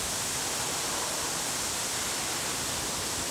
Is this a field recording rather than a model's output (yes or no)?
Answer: yes